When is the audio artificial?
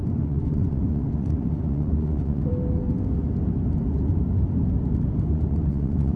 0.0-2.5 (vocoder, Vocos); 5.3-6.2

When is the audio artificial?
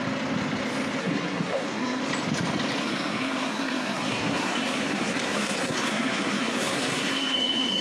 1.0-2.0 (codec, SNAC); 2.8-7.8